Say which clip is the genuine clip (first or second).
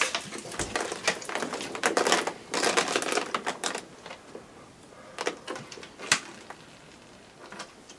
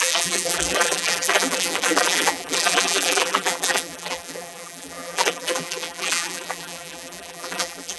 first